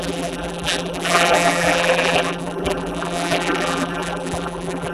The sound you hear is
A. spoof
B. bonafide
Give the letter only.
A